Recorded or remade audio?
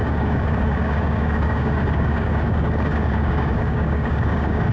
remade